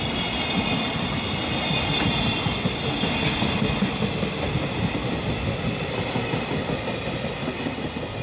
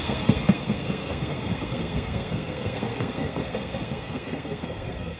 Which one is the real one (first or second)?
first